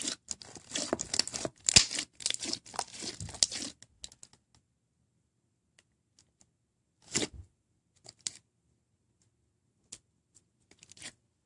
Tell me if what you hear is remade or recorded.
recorded